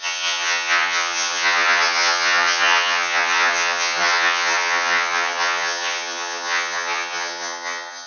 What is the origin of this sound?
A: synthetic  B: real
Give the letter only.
A